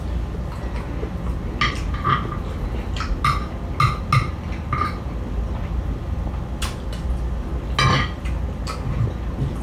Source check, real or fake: real